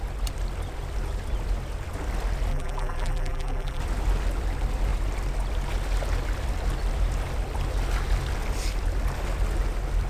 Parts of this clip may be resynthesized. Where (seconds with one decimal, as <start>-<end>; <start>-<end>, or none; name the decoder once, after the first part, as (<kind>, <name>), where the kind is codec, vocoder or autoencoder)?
2.5-3.8 (vocoder, BigVGAN v2)